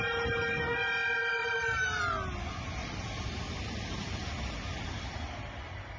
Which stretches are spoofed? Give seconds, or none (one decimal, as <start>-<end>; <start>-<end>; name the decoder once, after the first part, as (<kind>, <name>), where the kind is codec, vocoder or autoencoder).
1.4-2.0 (vocoder, BigVGAN v2); 2.8-4.9

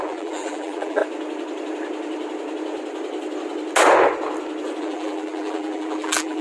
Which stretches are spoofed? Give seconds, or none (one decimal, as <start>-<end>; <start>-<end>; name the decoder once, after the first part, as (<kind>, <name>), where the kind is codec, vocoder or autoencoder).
0.0-1.0 (vocoder, BigVGAN v2); 4.8-6.4

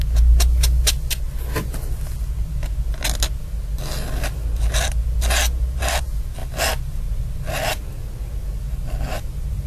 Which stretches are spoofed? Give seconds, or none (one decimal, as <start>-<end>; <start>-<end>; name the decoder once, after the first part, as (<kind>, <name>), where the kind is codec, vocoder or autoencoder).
6.4-7.0 (vocoder, BigVGAN v2)

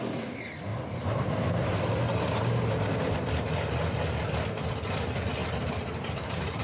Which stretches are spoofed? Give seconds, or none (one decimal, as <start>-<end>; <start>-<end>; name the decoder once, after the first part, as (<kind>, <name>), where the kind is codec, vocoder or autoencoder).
0.7-4.7 (vocoder, BigVGAN v2); 5.4-6.6

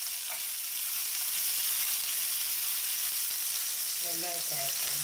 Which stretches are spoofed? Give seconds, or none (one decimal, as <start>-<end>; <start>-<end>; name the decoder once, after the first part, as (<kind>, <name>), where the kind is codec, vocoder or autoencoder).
none

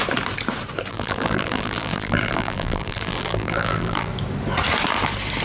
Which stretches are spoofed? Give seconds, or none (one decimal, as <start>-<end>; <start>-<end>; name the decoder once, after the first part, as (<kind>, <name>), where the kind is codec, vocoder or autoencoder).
0.9-4.1 (vocoder, BigVGAN v2)